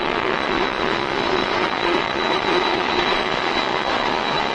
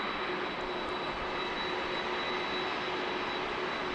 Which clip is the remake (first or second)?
first